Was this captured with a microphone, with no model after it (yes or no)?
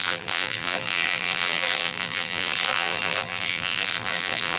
no